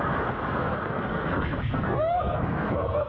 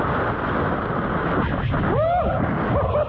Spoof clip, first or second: first